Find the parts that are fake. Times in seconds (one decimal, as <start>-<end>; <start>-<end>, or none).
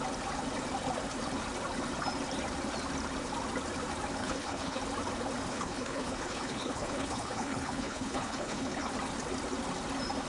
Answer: 4.2-4.8; 5.5-8.9